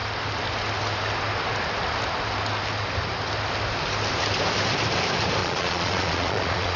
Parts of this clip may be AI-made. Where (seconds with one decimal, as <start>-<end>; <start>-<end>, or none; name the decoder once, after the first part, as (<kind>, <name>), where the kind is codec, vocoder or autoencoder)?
5.4-6.8 (vocoder, Vocos)